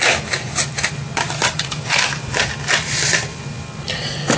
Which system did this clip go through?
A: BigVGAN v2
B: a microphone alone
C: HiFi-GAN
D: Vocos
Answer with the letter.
B